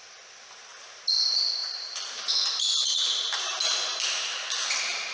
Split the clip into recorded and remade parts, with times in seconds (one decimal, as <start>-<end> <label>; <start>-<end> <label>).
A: 0.0-5.1 recorded